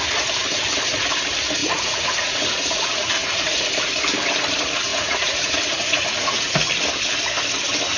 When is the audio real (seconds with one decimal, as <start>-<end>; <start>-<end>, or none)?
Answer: 0.0-1.6; 3.7-4.9; 6.7-8.0